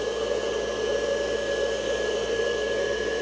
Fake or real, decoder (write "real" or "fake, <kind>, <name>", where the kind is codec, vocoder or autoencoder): real